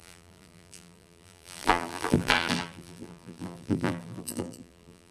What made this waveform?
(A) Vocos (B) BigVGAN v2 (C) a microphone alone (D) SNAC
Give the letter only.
B